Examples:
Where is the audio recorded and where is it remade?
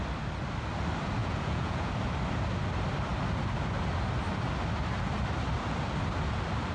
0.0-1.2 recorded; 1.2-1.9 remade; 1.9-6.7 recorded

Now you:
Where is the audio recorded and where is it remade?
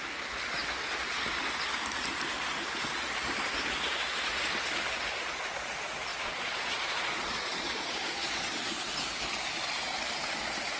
0.0-6.1 recorded; 6.1-8.9 remade; 8.9-10.8 recorded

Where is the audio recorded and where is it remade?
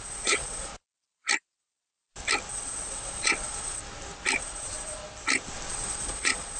0.0-0.7 remade; 0.7-2.5 recorded; 2.5-3.8 remade; 3.8-4.4 recorded; 4.4-5.0 remade; 5.0-5.7 recorded; 5.7-6.6 remade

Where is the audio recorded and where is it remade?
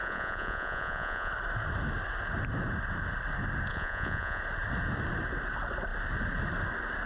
0.0-1.3 remade; 1.3-3.7 recorded; 3.7-4.4 remade; 4.4-7.1 recorded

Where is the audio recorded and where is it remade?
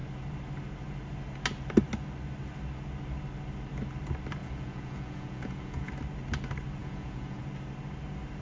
0.0-4.4 recorded; 4.4-5.9 remade; 5.9-6.8 recorded; 6.8-7.4 remade; 7.4-8.4 recorded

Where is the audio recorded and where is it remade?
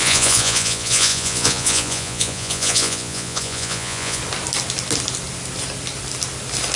0.0-4.2 remade; 4.2-6.8 recorded